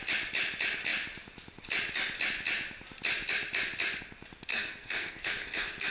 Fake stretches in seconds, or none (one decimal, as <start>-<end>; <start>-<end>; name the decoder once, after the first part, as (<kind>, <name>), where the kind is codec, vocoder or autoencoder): 4.5-5.9 (codec, SNAC)